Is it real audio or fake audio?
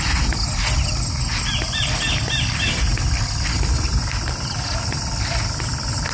real